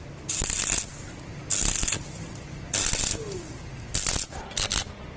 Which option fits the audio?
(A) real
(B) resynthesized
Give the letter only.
A